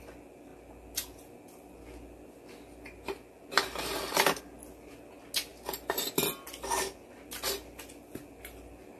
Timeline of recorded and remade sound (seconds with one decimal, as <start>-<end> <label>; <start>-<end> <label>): 0.0-9.0 recorded